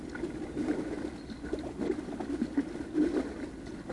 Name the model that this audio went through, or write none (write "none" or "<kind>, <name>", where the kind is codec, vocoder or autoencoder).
none